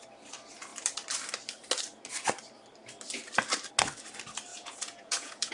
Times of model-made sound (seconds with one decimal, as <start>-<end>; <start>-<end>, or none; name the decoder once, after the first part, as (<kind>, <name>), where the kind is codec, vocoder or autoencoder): 4.5-5.5 (vocoder, Vocos)